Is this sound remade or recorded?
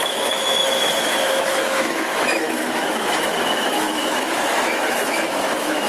remade